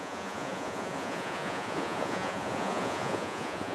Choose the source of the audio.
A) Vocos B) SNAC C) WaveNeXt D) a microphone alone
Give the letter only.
A